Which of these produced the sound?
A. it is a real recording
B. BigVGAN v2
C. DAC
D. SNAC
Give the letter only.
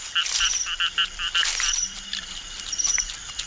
B